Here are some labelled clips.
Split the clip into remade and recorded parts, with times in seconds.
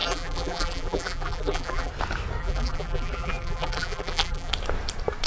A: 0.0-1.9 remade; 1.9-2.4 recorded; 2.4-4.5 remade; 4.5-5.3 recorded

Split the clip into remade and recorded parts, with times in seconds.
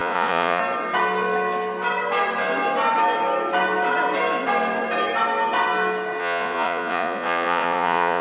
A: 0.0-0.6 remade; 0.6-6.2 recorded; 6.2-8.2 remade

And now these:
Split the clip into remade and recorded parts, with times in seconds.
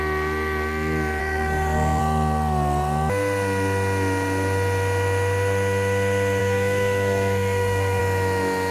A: 0.0-1.2 recorded; 1.2-2.0 remade; 2.0-6.4 recorded; 6.4-8.0 remade; 8.0-8.7 recorded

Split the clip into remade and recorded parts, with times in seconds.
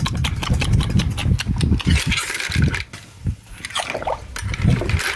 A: 0.0-5.2 recorded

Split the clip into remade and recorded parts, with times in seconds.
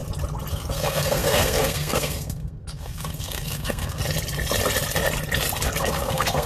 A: 0.0-0.5 recorded; 0.5-4.0 remade; 4.0-5.8 recorded; 5.8-6.5 remade